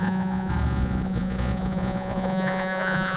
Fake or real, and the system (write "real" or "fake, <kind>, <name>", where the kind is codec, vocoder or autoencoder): fake, vocoder, Vocos